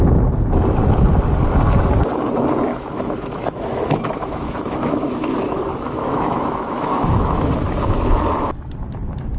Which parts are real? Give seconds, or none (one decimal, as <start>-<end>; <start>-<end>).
0.0-2.7; 7.5-9.4